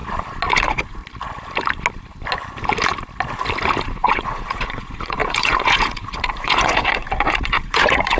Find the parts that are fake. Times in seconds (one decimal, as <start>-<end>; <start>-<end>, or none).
0.5-1.0; 3.8-8.2